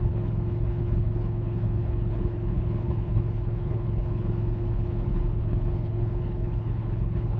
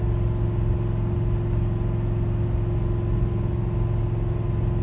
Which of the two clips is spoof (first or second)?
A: first